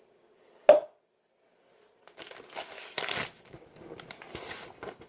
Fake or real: real